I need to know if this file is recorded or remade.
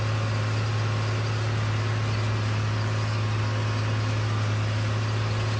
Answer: recorded